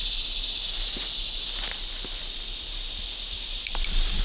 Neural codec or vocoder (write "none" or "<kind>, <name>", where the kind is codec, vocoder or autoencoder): none